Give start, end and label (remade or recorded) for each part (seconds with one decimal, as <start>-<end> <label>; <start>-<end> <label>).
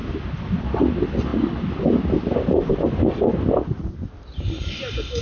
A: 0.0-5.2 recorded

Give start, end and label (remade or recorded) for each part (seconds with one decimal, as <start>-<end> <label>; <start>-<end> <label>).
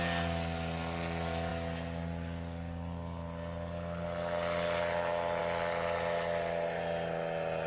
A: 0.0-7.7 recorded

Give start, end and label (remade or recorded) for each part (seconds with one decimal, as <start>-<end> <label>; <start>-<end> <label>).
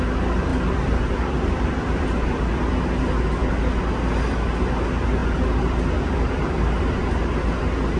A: 0.0-0.5 recorded; 0.5-2.8 remade; 2.8-5.2 recorded; 5.2-6.8 remade; 6.8-8.0 recorded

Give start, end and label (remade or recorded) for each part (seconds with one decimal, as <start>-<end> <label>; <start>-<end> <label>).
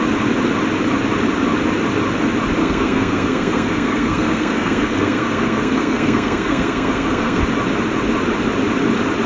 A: 0.0-2.6 recorded; 2.6-7.4 remade; 7.4-9.3 recorded